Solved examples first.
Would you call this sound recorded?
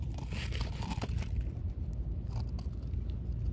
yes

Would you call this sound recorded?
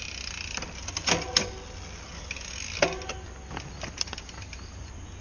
yes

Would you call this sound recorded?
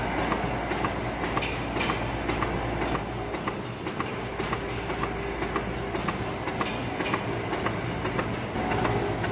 yes